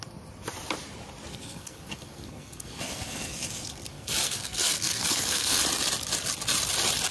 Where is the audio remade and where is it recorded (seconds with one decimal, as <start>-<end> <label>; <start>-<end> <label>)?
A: 0.0-1.3 recorded; 1.3-5.6 remade; 5.6-7.1 recorded